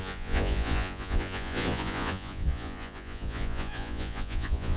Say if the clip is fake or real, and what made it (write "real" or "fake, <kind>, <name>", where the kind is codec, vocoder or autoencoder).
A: fake, vocoder, Vocos